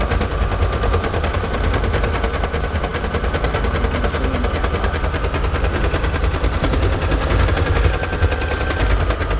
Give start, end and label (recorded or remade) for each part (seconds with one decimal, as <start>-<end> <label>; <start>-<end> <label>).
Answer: 0.0-9.4 recorded

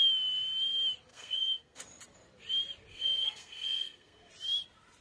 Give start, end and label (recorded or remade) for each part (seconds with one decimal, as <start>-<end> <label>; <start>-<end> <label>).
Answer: 0.0-1.1 recorded; 1.1-1.8 remade; 1.8-2.9 recorded; 2.9-4.3 remade; 4.3-5.0 recorded

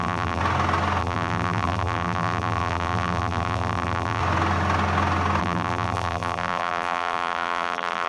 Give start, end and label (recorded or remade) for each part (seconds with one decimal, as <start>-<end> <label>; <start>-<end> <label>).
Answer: 0.0-0.4 remade; 0.4-1.0 recorded; 1.0-4.2 remade; 4.2-5.4 recorded; 5.4-8.1 remade

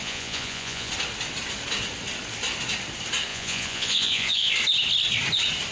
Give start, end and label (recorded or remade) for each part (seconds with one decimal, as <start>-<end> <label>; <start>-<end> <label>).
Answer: 0.0-0.9 remade; 0.9-3.3 recorded; 3.3-4.5 remade; 4.5-5.7 recorded